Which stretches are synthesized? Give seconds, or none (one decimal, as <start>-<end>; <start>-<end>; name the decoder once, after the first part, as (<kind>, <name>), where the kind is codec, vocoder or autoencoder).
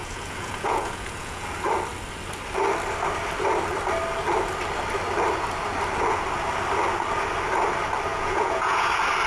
0.0-1.4 (vocoder, Vocos); 8.1-8.9